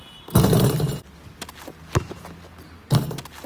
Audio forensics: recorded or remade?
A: recorded